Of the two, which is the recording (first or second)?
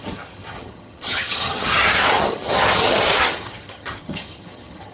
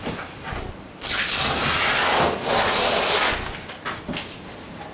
second